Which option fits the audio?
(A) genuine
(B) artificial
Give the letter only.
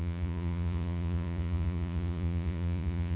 B